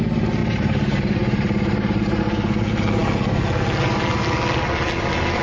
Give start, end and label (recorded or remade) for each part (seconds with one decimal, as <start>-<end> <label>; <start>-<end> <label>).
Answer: 0.0-0.4 recorded; 0.4-2.2 remade; 2.2-5.4 recorded

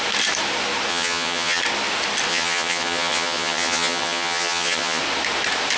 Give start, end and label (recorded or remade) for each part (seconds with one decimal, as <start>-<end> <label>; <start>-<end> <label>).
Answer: 0.0-0.9 recorded; 0.9-1.6 remade; 1.6-2.3 recorded; 2.3-5.0 remade; 5.0-5.8 recorded

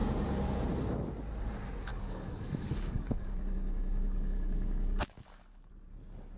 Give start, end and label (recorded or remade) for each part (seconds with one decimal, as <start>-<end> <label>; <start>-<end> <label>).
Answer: 0.0-1.9 recorded; 1.9-5.7 remade; 5.7-6.4 recorded

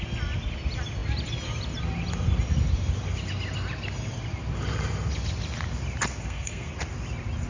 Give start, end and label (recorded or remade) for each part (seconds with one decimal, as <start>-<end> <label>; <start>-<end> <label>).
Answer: 0.0-6.1 recorded; 6.1-6.7 remade; 6.7-7.5 recorded